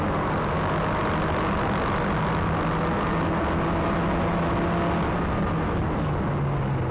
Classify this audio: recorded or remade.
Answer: recorded